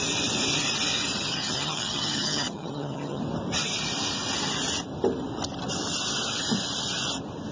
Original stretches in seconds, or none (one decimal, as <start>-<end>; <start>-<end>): 0.0-1.3; 3.2-7.5